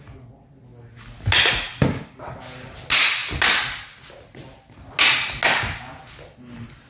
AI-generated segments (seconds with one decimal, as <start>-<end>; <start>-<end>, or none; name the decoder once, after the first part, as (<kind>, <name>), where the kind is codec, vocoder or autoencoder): none